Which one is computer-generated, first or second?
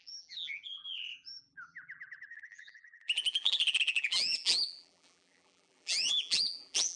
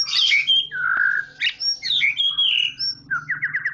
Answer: first